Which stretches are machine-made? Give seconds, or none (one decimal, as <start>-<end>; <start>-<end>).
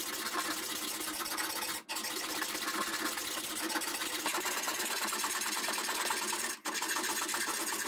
4.3-5.7